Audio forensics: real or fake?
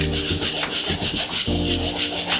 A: real